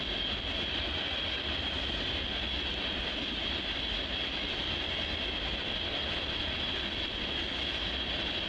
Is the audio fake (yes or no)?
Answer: no